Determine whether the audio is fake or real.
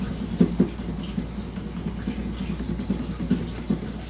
real